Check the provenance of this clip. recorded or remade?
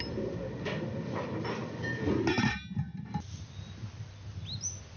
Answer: recorded